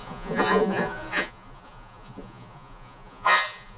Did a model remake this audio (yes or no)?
yes